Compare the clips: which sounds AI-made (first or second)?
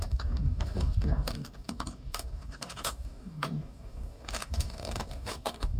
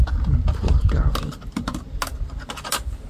first